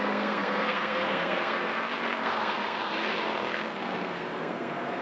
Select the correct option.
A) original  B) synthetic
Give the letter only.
B